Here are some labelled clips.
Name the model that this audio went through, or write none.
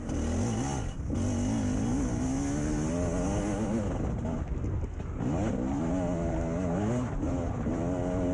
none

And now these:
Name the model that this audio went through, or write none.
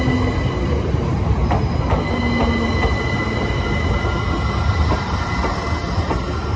none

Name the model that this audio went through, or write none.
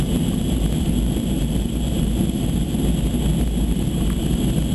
none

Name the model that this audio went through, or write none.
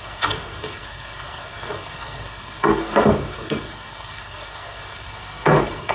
codec, SNAC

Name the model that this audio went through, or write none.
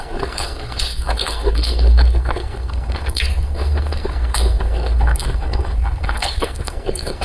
codec, SNAC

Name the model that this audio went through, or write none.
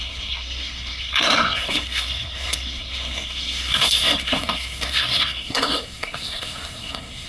codec, SNAC